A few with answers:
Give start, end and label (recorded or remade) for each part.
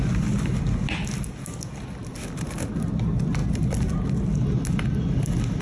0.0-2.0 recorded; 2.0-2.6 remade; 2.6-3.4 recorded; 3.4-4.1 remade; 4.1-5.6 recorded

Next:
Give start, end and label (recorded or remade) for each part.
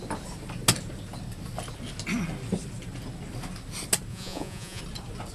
0.0-4.1 recorded; 4.1-4.8 remade; 4.8-5.3 recorded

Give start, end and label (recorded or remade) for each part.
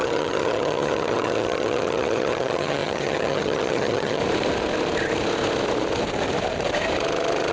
0.0-4.2 remade; 4.2-7.5 recorded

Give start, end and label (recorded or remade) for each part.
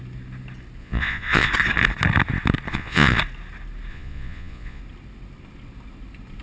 0.0-0.8 recorded; 0.8-1.5 remade; 1.5-2.7 recorded; 2.7-3.2 remade; 3.2-3.9 recorded; 3.9-4.8 remade; 4.8-6.4 recorded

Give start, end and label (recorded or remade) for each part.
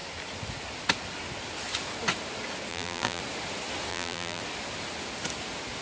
0.0-2.7 recorded; 2.7-3.2 remade; 3.2-3.9 recorded; 3.9-4.4 remade; 4.4-5.8 recorded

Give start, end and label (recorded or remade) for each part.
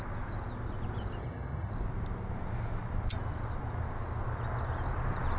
0.0-1.2 recorded; 1.2-1.7 remade; 1.7-5.4 recorded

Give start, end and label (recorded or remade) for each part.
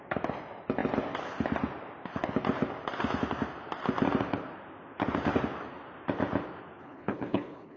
0.0-6.8 recorded; 6.8-7.8 remade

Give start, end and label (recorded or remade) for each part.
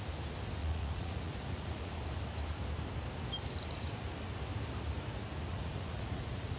0.0-0.6 recorded; 0.6-1.9 remade; 1.9-5.5 recorded; 5.5-6.6 remade